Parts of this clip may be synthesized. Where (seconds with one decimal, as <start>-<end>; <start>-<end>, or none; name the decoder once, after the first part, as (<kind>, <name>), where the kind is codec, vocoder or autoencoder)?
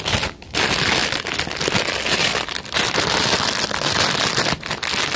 none